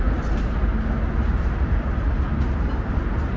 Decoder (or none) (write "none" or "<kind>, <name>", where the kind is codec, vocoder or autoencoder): none